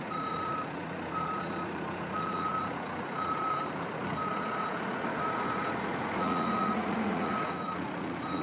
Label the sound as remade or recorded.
remade